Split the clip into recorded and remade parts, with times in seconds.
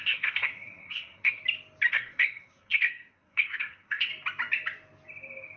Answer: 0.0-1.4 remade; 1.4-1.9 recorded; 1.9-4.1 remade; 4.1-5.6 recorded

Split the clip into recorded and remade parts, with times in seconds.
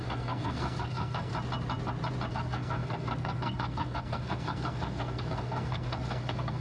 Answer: 0.0-1.3 remade; 1.3-2.3 recorded; 2.3-6.6 remade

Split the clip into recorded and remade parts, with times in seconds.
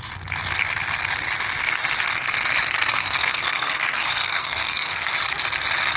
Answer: 0.0-2.9 recorded; 2.9-5.1 remade; 5.1-6.0 recorded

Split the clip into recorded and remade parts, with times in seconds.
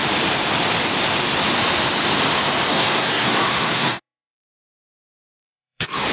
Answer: 0.0-2.7 recorded; 2.7-6.1 remade